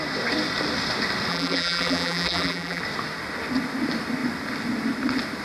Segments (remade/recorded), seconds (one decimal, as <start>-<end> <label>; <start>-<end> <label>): 0.0-1.3 recorded; 1.3-2.8 remade; 2.8-5.4 recorded